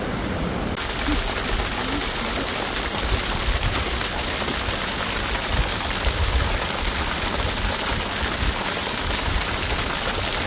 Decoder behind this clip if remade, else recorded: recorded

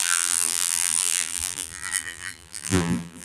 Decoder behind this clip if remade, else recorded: remade, vocoder, BigVGAN v2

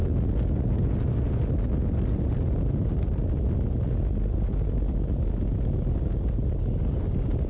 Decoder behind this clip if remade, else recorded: recorded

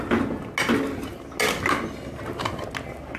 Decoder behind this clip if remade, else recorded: recorded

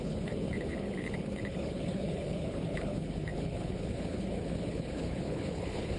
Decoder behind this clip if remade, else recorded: remade, codec, HILCodec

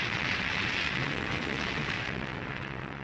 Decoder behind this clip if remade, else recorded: remade, vocoder, WaveNeXt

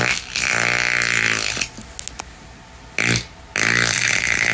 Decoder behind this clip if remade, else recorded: recorded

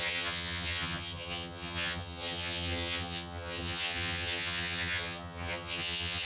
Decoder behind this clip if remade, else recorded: remade, vocoder, HiFi-GAN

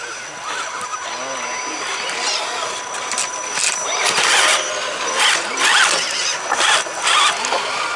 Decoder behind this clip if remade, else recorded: recorded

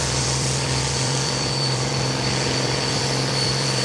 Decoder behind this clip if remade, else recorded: remade, vocoder, BigVGAN v2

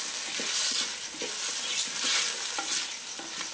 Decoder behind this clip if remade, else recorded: recorded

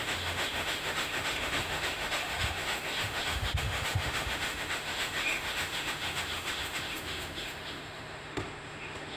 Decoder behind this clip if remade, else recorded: remade, autoencoder, DAC-VAE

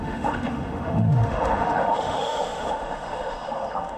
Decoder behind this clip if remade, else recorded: remade, autoencoder, DAC-VAE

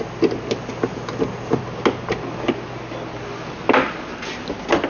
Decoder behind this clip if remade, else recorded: recorded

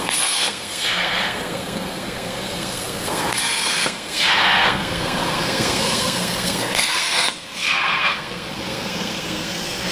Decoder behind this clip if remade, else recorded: remade, codec, SNAC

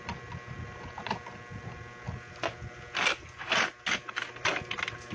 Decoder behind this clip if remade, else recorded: recorded